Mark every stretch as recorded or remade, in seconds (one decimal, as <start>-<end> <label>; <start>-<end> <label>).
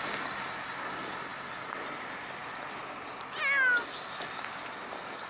0.0-5.3 recorded